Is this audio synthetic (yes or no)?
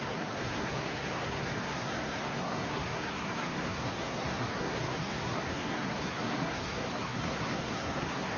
yes